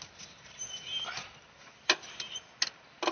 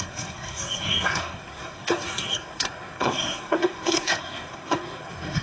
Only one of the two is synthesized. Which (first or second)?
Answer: second